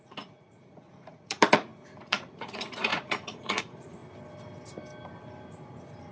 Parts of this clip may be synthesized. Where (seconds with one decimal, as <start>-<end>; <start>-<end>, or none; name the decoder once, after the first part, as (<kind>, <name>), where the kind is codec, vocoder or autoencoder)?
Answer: 0.0-4.0 (vocoder, Vocos)